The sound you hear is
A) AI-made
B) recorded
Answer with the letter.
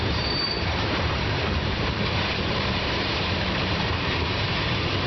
A